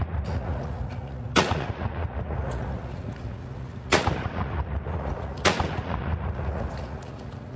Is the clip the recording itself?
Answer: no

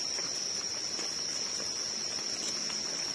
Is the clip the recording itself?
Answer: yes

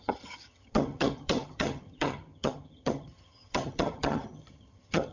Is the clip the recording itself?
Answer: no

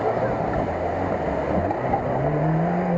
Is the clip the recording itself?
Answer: yes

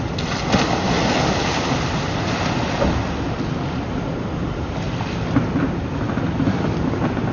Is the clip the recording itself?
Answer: yes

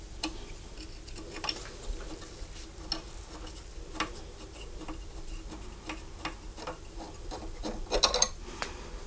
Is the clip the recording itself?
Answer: yes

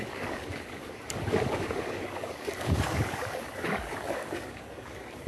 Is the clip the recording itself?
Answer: no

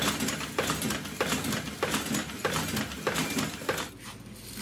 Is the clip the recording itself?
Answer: yes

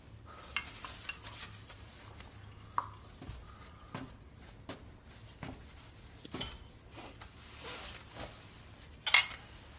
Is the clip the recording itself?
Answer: yes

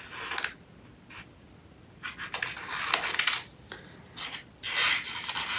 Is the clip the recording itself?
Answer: yes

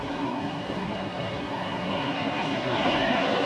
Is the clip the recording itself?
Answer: no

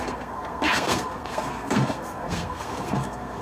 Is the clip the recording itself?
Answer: no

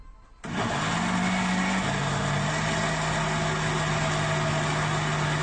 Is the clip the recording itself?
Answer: yes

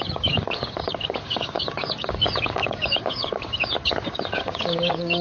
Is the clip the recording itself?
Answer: no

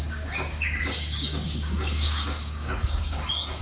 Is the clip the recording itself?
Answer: no